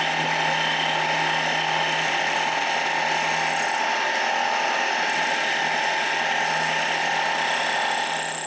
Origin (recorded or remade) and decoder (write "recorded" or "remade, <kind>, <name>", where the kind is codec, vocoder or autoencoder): recorded